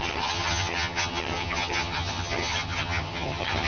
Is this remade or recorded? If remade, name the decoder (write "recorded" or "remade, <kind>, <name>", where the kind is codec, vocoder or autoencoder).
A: remade, vocoder, HiFi-GAN